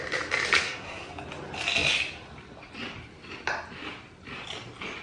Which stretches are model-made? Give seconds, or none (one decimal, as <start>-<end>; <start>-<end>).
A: 0.6-1.1